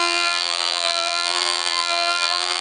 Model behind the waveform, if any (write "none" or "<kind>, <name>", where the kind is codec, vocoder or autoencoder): vocoder, BigVGAN v2